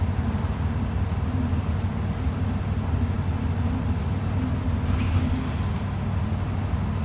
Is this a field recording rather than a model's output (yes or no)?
yes